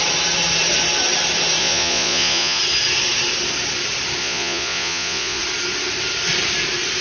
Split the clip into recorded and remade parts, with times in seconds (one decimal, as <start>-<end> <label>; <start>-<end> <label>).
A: 0.0-1.6 recorded; 1.6-2.6 remade; 2.6-4.2 recorded; 4.2-5.4 remade; 5.4-7.0 recorded